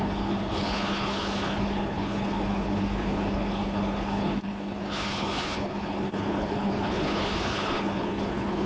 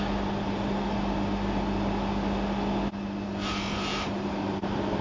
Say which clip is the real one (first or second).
second